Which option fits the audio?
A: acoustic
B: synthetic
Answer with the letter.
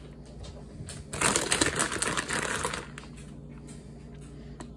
A